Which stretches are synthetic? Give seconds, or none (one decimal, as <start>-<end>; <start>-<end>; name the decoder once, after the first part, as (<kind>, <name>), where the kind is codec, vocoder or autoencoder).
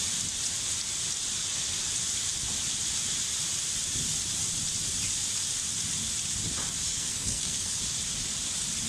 6.9-7.8 (codec, SNAC)